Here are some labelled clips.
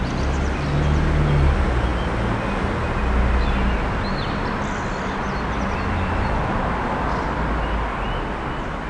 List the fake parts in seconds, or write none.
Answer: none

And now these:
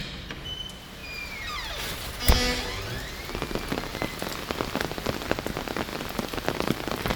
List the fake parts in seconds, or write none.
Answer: 3.9-5.3 (vocoder, BigVGAN v2); 5.9-7.2